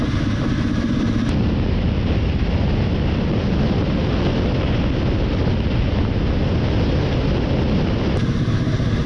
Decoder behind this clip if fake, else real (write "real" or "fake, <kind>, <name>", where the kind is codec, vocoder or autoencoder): real